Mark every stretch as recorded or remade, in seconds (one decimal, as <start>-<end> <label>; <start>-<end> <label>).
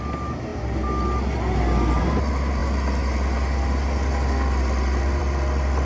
0.0-5.8 recorded